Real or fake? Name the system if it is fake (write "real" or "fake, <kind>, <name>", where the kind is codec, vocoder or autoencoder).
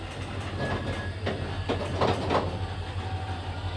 real